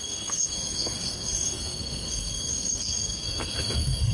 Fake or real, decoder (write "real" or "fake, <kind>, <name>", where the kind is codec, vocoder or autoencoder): fake, codec, SNAC